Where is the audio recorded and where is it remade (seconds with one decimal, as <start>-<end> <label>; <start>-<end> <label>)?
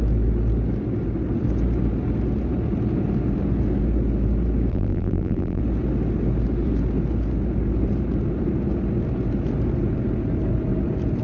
0.0-4.7 recorded; 4.7-5.6 remade; 5.6-11.2 recorded